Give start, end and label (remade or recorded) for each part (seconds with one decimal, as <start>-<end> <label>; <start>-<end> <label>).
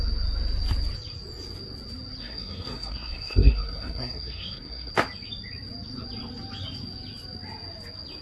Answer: 0.0-2.2 recorded; 2.2-4.9 remade; 4.9-8.2 recorded